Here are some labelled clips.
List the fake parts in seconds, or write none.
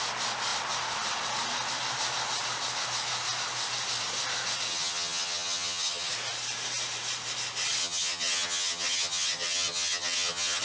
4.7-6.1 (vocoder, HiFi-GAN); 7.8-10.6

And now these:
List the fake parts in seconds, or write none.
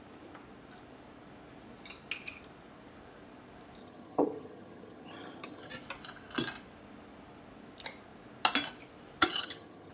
3.8-5.7 (vocoder, HiFi-GAN); 9.2-9.9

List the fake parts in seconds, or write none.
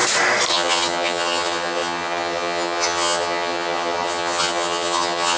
0.5-5.4 (vocoder, HiFi-GAN)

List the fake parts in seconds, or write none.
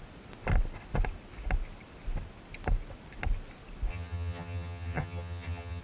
3.9-5.8 (vocoder, HiFi-GAN)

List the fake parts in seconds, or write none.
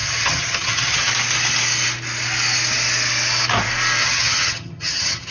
0.0-1.1 (vocoder, HiFi-GAN); 4.0-5.3